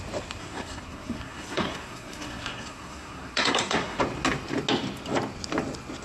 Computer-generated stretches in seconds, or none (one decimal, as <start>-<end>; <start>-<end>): 0.4-4.0